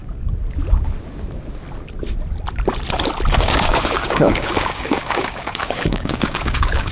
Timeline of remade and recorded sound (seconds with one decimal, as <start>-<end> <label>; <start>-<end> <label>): 0.0-3.3 recorded; 3.3-6.9 remade